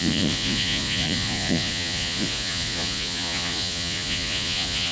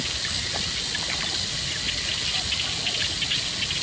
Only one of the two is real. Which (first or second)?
second